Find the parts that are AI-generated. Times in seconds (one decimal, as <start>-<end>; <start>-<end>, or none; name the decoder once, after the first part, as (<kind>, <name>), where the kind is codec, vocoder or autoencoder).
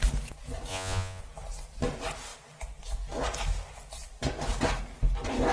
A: 0.7-1.2 (vocoder, Vocos)